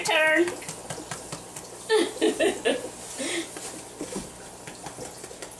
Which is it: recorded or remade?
recorded